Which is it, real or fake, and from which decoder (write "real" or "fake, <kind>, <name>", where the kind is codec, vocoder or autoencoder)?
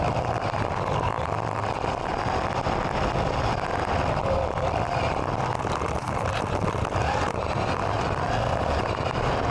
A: real